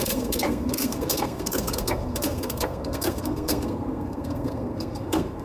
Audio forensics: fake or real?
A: fake